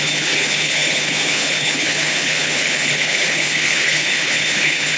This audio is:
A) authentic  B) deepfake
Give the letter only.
B